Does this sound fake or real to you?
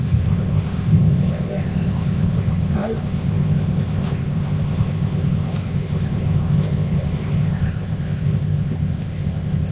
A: fake